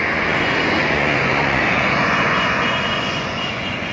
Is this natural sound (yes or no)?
no